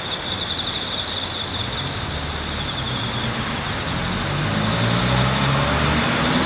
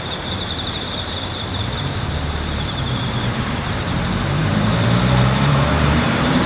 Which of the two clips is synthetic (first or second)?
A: second